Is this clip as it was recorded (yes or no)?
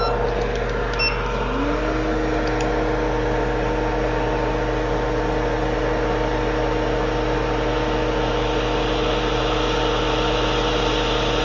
yes